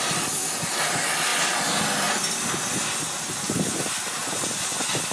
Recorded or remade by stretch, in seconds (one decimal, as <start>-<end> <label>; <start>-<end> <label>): 0.0-5.1 recorded